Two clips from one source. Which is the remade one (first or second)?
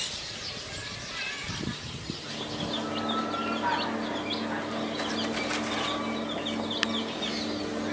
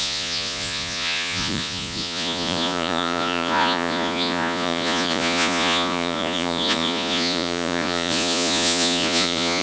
second